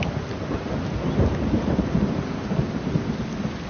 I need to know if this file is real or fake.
real